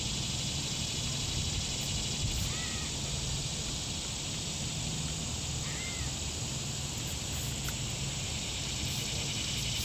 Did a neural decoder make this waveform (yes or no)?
no